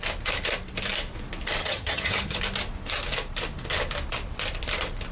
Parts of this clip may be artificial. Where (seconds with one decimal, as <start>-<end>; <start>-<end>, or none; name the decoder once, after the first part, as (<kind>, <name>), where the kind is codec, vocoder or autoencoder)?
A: 1.6-2.4 (vocoder, HiFi-GAN)